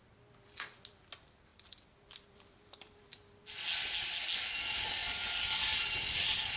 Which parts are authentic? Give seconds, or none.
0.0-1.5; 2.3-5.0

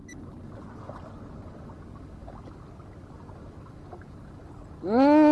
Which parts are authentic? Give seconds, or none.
0.0-5.3